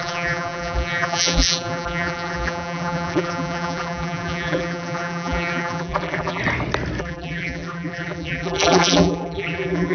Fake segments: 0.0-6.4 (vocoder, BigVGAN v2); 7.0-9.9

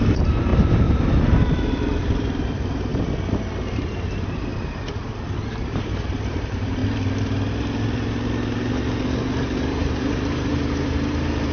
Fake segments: 0.0-2.9 (vocoder, BigVGAN v2); 3.7-4.5; 5.6-6.8; 9.8-11.5

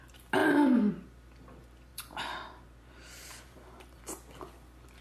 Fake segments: 1.9-4.0 (vocoder, BigVGAN v2)

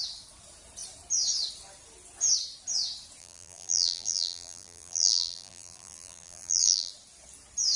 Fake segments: 3.2-6.9 (vocoder, BigVGAN v2)

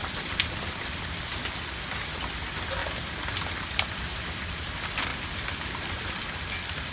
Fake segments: 0.0-1.0 (vocoder, BigVGAN v2); 5.1-6.2

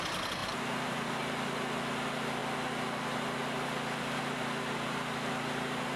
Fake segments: 0.4-1.2 (vocoder, BigVGAN v2)